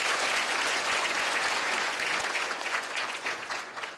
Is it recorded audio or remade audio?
remade